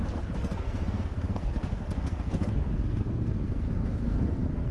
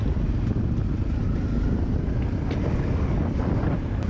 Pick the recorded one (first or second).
second